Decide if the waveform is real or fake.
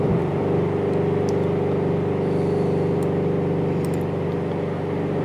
real